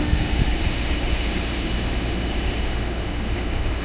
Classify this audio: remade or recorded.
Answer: remade